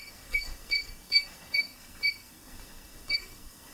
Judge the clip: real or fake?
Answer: fake